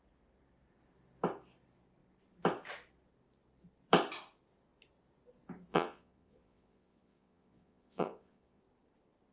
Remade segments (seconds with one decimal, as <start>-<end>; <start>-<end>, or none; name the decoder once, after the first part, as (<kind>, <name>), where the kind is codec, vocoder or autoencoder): 5.7-8.6 (vocoder, Vocos)